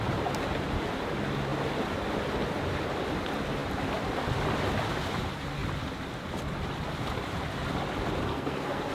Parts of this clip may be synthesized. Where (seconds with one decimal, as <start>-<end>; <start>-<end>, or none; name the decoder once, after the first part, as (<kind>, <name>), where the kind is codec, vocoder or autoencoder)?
8.3-8.9 (codec, SNAC)